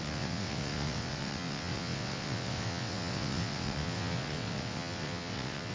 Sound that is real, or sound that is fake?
fake